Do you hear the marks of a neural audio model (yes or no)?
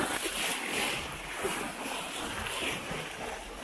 no